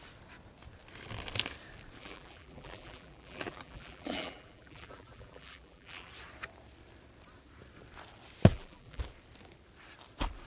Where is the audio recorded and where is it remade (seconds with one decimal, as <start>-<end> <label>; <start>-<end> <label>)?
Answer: 0.0-2.0 recorded; 2.0-6.1 remade; 6.1-8.5 recorded; 8.5-9.0 remade; 9.0-10.5 recorded